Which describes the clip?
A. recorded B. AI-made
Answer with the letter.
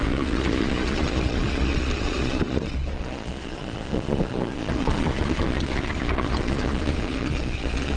B